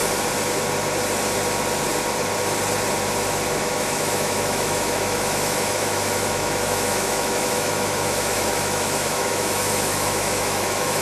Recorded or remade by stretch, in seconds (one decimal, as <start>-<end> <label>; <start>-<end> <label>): 0.0-3.5 recorded; 3.5-11.0 remade